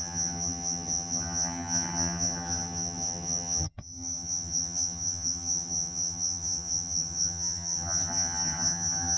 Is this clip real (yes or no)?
no